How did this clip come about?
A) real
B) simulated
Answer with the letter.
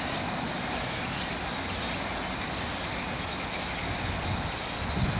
A